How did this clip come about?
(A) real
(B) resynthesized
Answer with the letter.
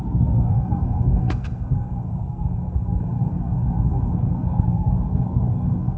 B